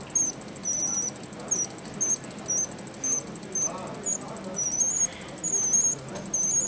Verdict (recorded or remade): recorded